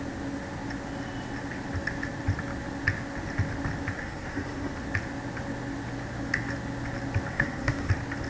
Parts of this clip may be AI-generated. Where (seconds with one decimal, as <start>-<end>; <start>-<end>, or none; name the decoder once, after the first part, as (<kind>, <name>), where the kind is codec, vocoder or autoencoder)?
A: 4.0-4.7 (codec, SNAC); 7.3-7.9